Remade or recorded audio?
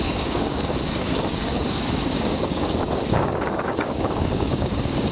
remade